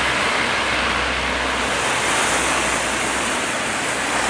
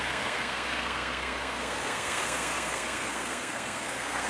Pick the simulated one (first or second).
second